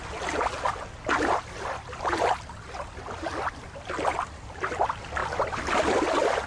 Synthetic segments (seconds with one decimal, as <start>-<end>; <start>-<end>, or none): none